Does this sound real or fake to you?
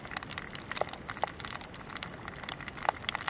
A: real